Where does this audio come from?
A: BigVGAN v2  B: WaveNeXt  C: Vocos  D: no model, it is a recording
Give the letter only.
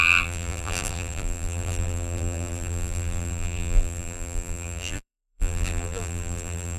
A